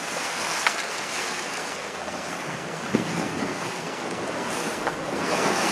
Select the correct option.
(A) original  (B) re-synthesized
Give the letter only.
B